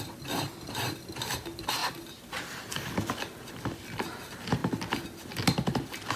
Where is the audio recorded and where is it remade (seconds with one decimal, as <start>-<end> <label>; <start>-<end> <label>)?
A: 0.0-6.2 recorded